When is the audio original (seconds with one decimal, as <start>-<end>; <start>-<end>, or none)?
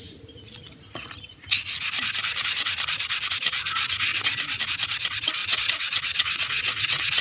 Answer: 0.0-4.1; 4.6-5.4